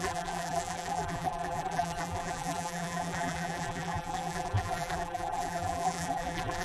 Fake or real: fake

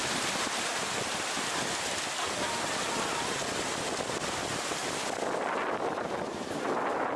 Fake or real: real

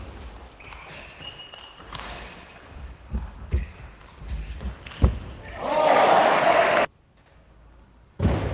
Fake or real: real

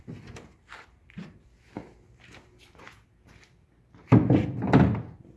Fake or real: real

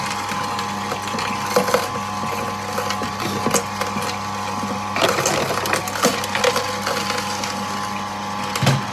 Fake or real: real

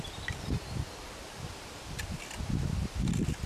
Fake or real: fake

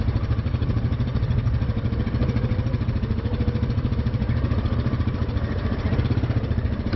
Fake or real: fake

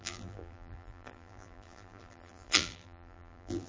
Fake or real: fake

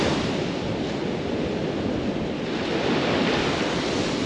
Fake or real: real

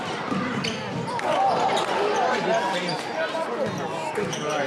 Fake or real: fake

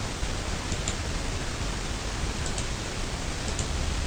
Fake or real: real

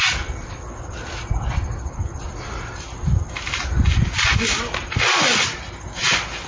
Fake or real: real